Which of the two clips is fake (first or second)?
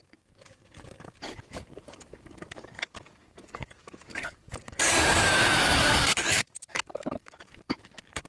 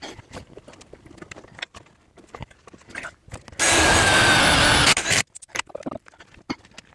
first